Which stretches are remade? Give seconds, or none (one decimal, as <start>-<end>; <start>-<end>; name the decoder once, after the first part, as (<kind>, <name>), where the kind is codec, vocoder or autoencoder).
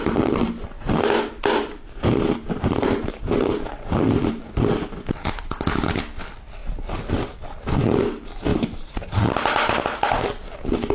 1.5-4.4 (vocoder, BigVGAN v2); 6.6-7.1; 8.5-9.3